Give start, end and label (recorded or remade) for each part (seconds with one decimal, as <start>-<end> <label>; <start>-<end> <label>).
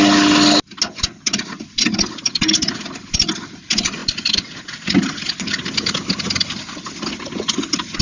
0.0-8.0 recorded